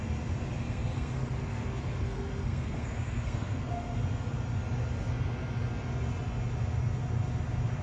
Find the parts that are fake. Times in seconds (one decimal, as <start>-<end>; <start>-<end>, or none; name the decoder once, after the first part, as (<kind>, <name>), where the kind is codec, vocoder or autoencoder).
0.6-3.7 (codec, SNAC)